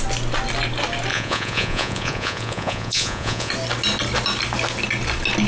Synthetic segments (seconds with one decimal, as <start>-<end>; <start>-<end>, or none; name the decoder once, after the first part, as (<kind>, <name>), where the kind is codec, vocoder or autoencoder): 1.1-3.5 (vocoder, Vocos)